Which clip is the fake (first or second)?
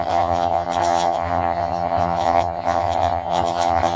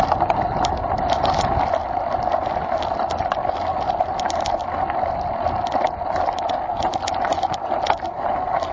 first